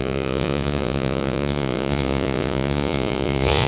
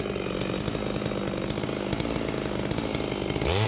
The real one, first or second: second